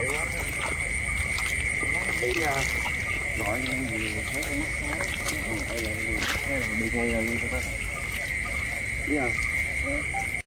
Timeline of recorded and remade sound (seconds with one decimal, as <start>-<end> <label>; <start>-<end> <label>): 0.0-4.1 recorded; 4.1-4.8 remade; 4.8-10.5 recorded